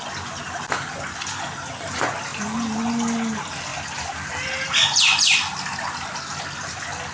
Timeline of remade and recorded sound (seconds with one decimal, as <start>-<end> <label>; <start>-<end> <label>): 0.0-7.1 recorded